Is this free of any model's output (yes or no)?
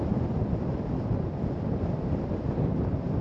yes